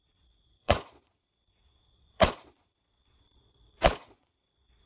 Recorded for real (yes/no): no